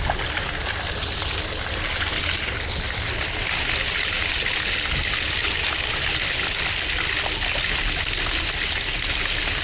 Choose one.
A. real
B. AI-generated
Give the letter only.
A